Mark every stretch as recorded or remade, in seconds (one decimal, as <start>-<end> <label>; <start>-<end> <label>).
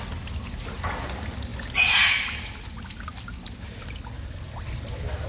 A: 0.0-5.3 recorded